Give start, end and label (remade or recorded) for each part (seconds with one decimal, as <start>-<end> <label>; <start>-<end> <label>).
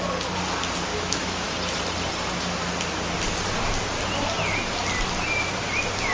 0.0-0.9 recorded; 0.9-1.5 remade; 1.5-6.1 recorded